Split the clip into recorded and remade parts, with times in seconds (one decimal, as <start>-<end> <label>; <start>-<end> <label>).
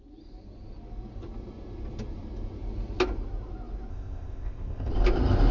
0.0-3.9 recorded; 3.9-4.9 remade; 4.9-5.5 recorded